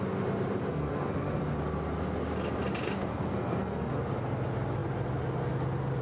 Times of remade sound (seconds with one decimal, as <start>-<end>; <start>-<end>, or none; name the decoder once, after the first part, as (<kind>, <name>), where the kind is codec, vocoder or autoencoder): 0.7-1.4 (codec, SNAC); 3.1-3.9